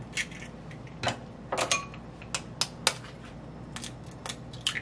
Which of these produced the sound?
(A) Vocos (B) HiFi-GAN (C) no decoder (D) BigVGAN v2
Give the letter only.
C